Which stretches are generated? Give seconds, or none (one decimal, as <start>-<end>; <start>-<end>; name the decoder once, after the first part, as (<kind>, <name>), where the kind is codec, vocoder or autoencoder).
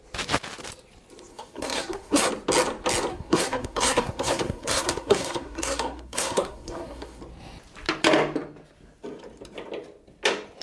1.3-2.3 (codec, SNAC); 3.1-7.2